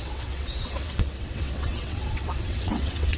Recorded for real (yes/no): no